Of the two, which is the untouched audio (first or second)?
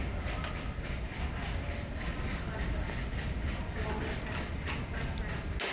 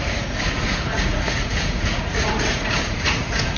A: first